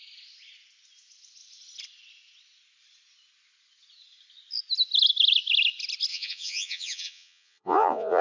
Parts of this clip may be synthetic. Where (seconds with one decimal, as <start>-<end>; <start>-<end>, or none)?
6.1-8.2